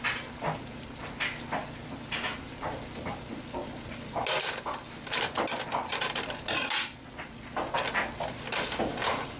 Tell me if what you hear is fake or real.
real